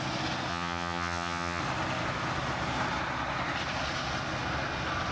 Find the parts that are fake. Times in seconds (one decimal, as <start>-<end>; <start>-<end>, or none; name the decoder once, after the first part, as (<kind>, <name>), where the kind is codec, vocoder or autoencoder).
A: 0.5-1.6 (vocoder, HiFi-GAN)